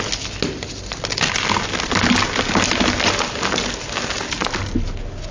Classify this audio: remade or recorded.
recorded